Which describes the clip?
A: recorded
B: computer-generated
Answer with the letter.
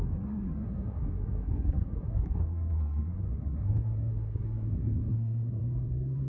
B